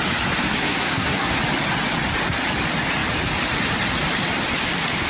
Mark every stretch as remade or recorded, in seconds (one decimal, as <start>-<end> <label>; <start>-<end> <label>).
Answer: 0.0-0.4 recorded; 0.4-1.3 remade; 1.3-5.1 recorded